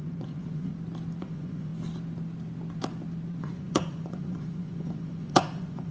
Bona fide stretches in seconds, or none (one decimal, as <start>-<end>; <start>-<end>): 0.7-1.2; 1.7-3.4